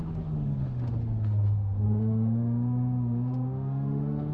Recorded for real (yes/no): no